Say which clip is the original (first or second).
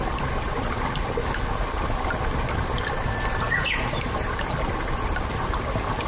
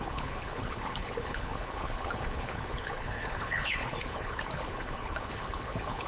first